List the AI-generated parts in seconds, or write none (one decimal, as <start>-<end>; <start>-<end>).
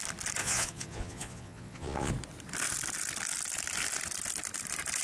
0.4-2.1